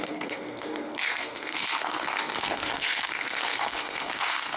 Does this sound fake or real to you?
fake